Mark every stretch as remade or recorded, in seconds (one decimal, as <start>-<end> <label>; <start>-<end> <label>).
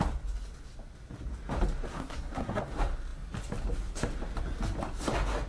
0.0-1.9 recorded; 1.9-2.6 remade; 2.6-5.5 recorded